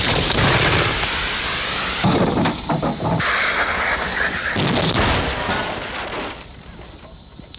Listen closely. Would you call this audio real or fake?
fake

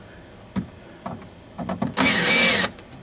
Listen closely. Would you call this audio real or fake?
real